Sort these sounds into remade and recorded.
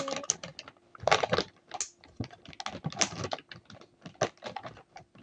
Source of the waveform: recorded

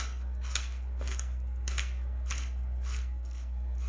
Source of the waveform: remade